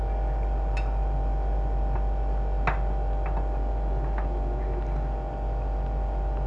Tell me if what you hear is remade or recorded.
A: recorded